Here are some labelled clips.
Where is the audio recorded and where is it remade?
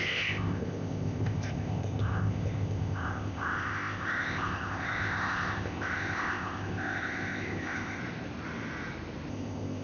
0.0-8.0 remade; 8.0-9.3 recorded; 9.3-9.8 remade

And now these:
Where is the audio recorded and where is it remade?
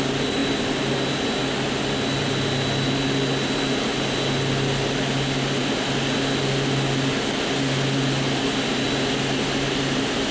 0.0-10.3 recorded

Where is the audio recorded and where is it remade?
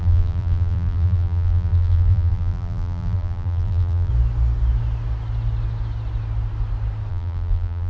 0.0-4.1 remade; 4.1-7.1 recorded; 7.1-7.9 remade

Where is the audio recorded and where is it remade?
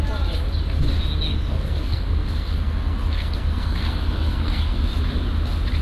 0.0-1.3 recorded; 1.3-4.8 remade; 4.8-5.8 recorded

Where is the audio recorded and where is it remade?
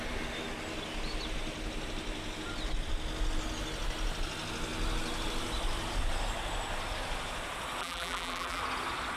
0.0-7.8 recorded; 7.8-8.6 remade; 8.6-9.2 recorded